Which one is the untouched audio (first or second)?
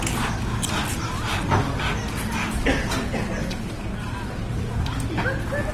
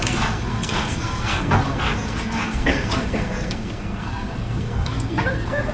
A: first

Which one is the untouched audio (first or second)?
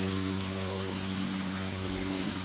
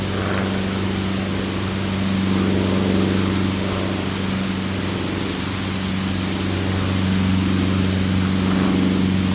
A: second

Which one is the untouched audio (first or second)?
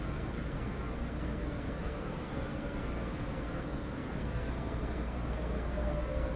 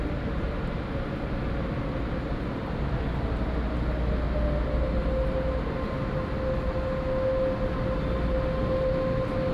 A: second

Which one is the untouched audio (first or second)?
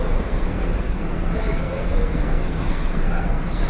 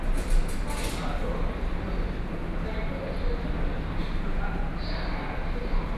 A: second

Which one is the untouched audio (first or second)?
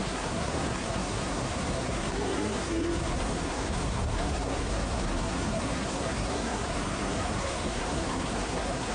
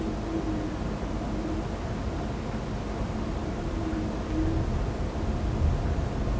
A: second